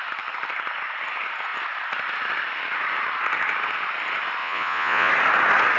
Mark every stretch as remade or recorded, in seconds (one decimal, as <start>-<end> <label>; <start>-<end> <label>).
0.0-4.4 recorded; 4.4-5.1 remade; 5.1-5.8 recorded